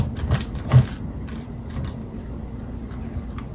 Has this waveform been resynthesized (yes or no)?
no